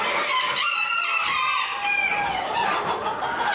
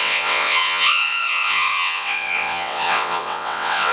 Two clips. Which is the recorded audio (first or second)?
first